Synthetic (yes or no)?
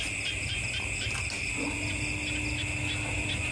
no